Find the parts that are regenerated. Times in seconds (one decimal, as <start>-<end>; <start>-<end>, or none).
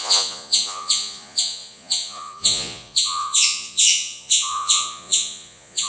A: 0.0-5.9